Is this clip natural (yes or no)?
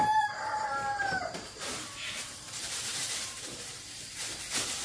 no